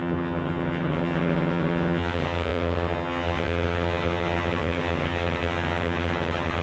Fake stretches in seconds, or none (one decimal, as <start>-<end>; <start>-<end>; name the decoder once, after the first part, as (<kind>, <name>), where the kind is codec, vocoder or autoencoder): 0.0-6.6 (vocoder, HiFi-GAN)

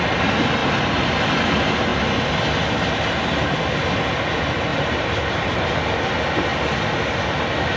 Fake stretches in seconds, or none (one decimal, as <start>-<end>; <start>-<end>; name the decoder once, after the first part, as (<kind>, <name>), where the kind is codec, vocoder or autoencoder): 0.6-1.5 (vocoder, BigVGAN v2); 4.7-6.0

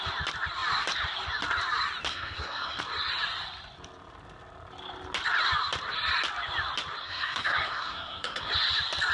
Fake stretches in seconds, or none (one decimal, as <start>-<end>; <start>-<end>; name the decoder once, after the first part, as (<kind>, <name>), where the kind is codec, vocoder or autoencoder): 2.1-2.8 (codec, SNAC); 7.0-8.5

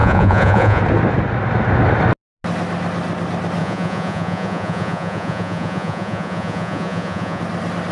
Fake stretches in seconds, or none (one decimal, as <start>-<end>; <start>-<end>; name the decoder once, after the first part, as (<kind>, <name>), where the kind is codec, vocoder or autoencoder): 0.0-0.8 (vocoder, Vocos); 3.6-7.4

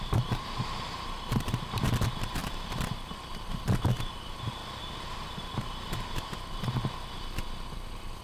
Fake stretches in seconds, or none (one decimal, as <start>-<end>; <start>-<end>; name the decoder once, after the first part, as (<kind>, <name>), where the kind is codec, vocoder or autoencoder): none